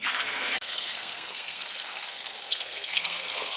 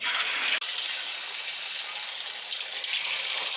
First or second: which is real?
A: second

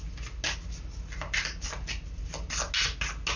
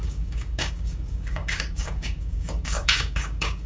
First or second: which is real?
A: first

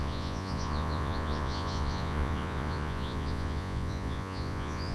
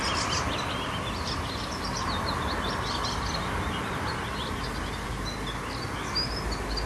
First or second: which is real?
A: second